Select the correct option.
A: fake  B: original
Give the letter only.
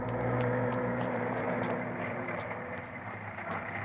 A